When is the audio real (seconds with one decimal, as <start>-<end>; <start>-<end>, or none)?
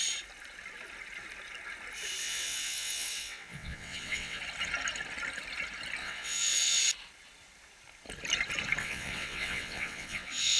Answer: 0.0-2.2; 4.4-6.0; 6.8-8.8